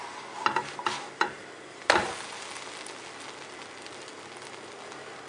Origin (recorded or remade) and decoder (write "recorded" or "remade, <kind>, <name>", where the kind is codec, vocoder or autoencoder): recorded